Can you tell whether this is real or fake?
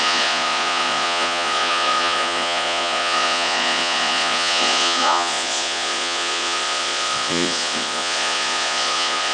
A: fake